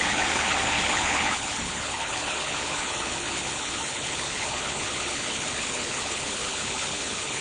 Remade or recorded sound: remade